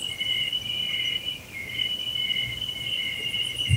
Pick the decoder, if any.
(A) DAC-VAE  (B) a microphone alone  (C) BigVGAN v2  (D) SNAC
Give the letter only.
B